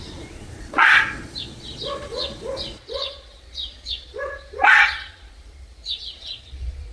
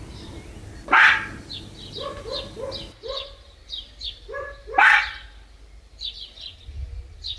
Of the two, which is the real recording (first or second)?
second